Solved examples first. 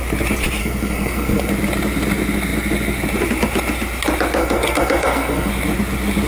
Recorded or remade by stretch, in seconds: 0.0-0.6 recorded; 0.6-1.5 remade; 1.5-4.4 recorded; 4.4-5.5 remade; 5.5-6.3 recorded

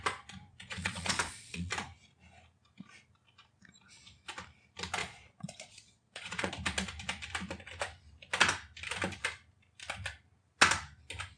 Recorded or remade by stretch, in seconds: 0.0-0.5 recorded; 0.5-1.7 remade; 1.7-5.0 recorded; 5.0-6.5 remade; 6.5-11.4 recorded

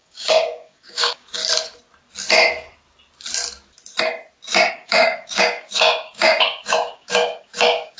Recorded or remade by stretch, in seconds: 0.0-1.4 remade; 1.4-4.7 recorded; 4.7-8.0 remade

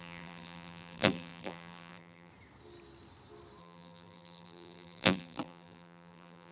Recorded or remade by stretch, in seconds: 0.0-2.3 remade; 2.3-3.6 recorded; 3.6-6.5 remade

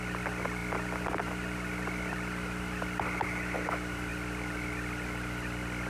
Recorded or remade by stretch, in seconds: 0.0-5.9 recorded